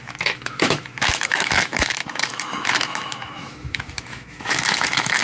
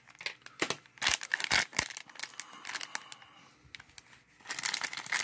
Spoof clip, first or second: first